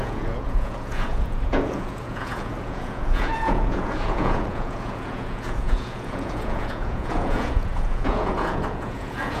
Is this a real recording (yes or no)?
no